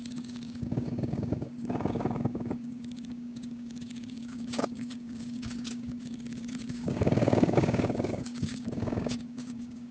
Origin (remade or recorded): remade